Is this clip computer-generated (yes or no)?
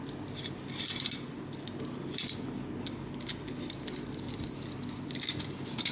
no